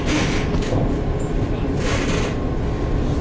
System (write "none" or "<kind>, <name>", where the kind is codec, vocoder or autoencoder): none